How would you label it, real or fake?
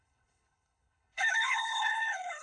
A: fake